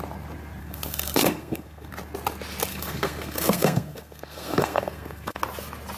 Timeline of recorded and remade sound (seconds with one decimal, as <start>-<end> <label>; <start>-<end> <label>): 0.0-0.6 recorded; 0.6-1.9 remade; 1.9-2.7 recorded; 2.7-5.4 remade; 5.4-6.0 recorded